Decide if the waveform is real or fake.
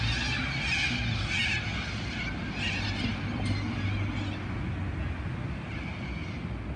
real